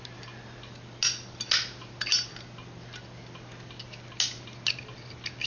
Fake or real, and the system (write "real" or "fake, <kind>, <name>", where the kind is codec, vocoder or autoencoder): real